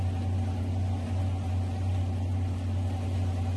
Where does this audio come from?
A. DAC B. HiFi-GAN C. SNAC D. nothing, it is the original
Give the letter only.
D